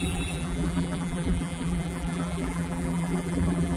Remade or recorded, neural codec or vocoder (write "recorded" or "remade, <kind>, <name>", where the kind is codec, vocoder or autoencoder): remade, vocoder, BigVGAN v2